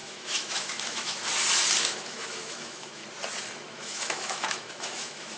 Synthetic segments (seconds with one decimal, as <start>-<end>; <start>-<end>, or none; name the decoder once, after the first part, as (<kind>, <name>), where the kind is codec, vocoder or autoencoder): 0.0-1.2 (autoencoder, DAC-VAE); 1.8-3.0; 3.7-5.4